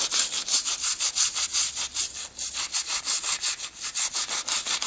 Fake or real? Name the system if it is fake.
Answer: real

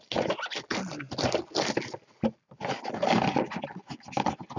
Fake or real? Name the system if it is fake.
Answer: real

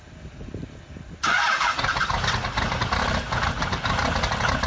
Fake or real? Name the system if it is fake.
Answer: real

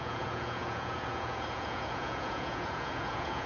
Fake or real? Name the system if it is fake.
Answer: fake, vocoder, Vocos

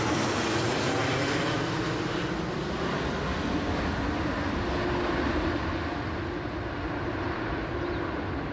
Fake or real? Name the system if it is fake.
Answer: real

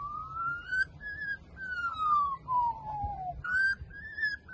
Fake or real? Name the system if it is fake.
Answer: real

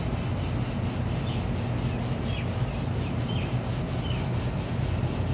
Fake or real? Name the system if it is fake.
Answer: real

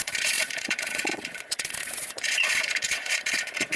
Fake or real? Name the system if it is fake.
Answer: fake, vocoder, Vocos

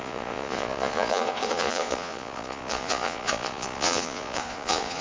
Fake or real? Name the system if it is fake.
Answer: fake, vocoder, Vocos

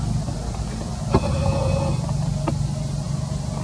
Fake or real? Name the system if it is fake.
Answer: real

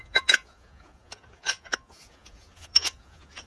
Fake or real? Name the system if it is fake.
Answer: fake, vocoder, Vocos